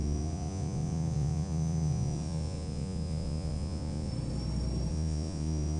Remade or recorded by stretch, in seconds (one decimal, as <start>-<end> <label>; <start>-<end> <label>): 0.0-4.1 remade; 4.1-4.9 recorded; 4.9-5.8 remade

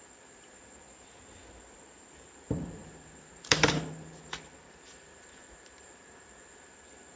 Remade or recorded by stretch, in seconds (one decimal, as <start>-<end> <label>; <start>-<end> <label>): 0.0-7.2 remade

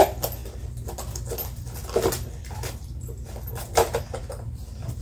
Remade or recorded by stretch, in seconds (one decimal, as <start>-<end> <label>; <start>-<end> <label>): 0.0-5.0 remade

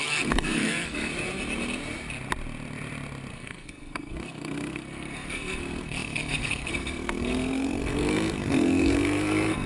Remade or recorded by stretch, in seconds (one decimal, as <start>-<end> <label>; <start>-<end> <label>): 0.0-1.1 remade; 1.1-3.3 recorded; 3.3-9.7 remade

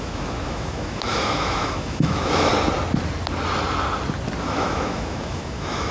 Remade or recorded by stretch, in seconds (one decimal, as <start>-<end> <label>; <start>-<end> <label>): 0.0-2.5 remade; 2.5-4.4 recorded; 4.4-5.9 remade

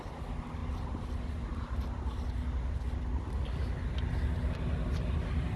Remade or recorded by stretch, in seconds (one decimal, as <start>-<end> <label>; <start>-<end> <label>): 0.0-5.6 recorded

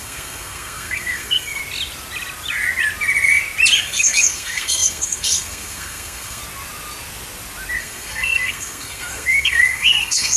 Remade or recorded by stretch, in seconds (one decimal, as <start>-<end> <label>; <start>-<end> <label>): 0.0-1.6 remade; 1.6-3.8 recorded; 3.8-6.4 remade; 6.4-7.8 recorded; 7.8-10.4 remade

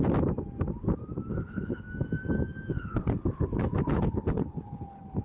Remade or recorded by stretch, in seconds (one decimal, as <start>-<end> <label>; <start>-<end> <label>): 0.0-1.3 recorded; 1.3-1.8 remade; 1.8-2.7 recorded; 2.7-5.2 remade